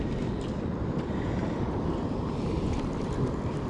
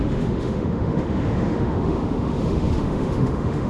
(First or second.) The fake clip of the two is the second